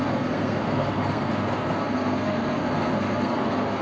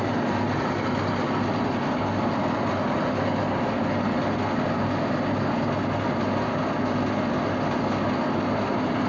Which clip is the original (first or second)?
second